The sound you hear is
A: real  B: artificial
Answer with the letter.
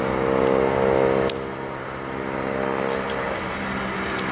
A